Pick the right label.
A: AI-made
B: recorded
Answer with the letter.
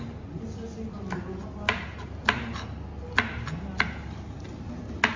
B